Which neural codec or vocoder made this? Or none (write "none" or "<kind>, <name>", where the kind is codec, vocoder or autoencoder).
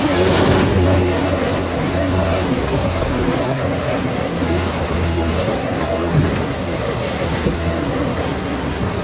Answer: codec, SNAC